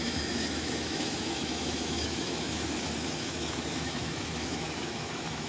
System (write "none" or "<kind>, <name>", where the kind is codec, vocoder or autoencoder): autoencoder, DAC-VAE